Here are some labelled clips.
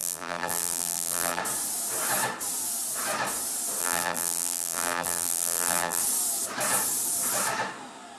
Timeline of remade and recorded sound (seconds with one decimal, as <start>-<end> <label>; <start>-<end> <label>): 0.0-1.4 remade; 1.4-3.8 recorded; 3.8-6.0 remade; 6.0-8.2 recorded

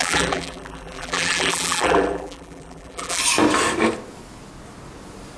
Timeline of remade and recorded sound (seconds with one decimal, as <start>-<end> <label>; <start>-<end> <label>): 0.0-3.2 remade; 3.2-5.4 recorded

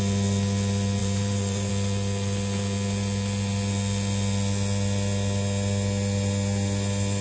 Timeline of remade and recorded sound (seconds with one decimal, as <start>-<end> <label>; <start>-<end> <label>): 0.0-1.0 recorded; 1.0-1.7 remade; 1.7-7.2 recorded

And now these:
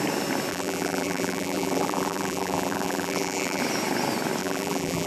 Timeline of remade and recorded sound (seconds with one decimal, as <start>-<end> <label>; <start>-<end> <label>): 0.0-0.5 recorded; 0.5-3.6 remade; 3.6-4.4 recorded; 4.4-5.1 remade